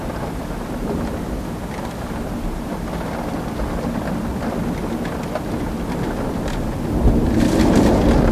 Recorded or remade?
recorded